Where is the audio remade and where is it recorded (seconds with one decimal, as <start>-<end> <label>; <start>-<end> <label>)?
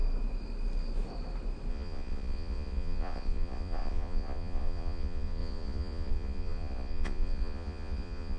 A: 0.0-1.7 recorded; 1.7-8.4 remade